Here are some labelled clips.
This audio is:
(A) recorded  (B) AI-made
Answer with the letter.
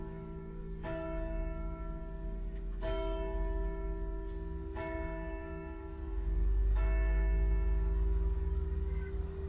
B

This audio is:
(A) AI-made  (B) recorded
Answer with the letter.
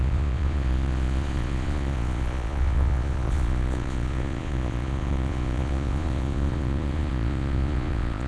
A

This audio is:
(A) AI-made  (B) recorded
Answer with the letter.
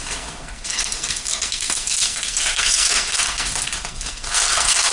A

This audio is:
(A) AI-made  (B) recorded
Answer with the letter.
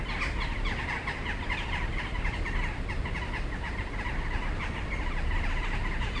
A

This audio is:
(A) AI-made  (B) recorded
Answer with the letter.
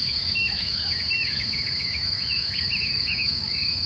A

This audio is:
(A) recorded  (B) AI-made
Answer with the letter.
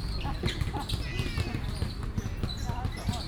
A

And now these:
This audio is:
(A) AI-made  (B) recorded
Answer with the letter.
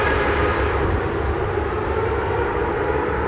B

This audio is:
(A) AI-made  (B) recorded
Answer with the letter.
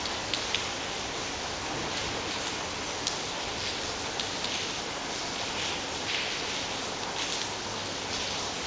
B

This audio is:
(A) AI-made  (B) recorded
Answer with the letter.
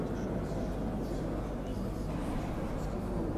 B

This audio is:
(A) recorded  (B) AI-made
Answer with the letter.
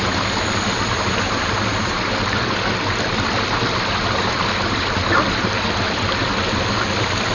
A